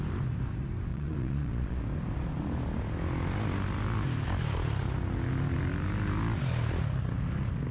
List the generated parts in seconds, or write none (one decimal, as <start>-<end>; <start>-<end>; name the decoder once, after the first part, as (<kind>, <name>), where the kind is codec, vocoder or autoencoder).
0.9-1.8 (vocoder, Vocos)

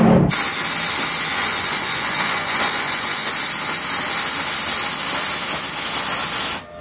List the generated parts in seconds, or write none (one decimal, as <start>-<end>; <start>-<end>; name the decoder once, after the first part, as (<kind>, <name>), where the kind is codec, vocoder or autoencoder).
1.3-3.3 (vocoder, Vocos)

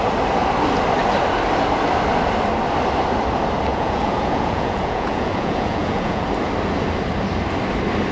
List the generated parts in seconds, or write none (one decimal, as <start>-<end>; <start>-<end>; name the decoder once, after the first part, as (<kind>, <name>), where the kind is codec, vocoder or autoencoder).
3.7-6.2 (vocoder, Vocos)

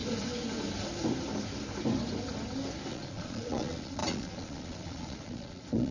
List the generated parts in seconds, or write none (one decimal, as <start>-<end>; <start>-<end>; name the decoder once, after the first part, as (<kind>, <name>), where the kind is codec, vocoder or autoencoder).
2.9-5.9 (vocoder, Vocos)

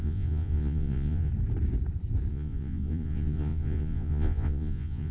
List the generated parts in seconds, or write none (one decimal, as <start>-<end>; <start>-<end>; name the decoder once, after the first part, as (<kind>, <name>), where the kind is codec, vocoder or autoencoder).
0.0-1.3 (vocoder, Vocos); 2.3-5.1